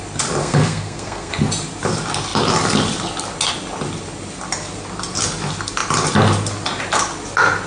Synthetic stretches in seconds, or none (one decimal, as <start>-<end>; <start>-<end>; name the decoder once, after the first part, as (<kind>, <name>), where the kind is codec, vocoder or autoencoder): 0.4-1.3 (codec, SNAC)